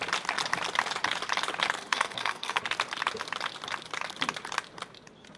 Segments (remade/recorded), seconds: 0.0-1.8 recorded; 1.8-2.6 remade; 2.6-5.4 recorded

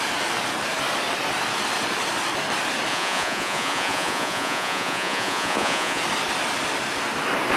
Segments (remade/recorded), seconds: 0.0-2.9 recorded; 2.9-6.0 remade; 6.0-7.6 recorded

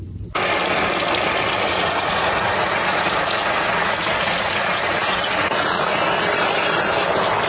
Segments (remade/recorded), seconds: 0.0-1.7 recorded; 1.7-5.9 remade; 5.9-7.5 recorded

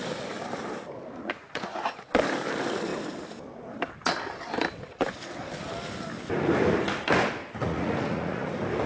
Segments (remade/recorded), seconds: 0.0-1.2 recorded; 1.2-1.8 remade; 1.8-7.6 recorded; 7.6-8.5 remade; 8.5-8.9 recorded

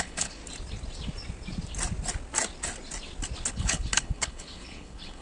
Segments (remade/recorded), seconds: 0.0-0.4 remade; 0.4-3.5 recorded; 3.5-5.2 remade

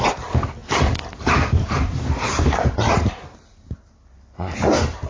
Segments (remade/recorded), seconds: 0.0-0.6 recorded; 0.6-3.7 remade; 3.7-5.1 recorded

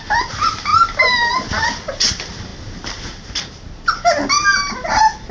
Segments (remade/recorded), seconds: 0.0-5.3 recorded

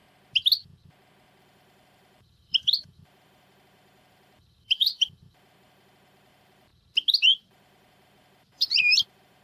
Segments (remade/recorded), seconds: 0.0-1.4 recorded; 1.4-6.7 remade; 6.7-7.5 recorded; 7.5-9.4 remade